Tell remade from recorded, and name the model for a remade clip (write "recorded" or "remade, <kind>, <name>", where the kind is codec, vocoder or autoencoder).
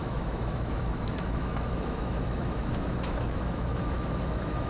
remade, autoencoder, DAC-VAE